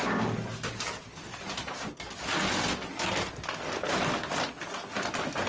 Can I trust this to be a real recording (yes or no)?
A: yes